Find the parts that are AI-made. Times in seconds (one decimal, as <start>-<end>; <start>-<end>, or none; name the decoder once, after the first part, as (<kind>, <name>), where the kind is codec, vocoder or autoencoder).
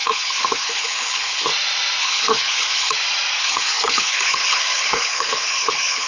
0.0-1.5 (codec, HILCodec); 2.0-2.9; 3.4-6.1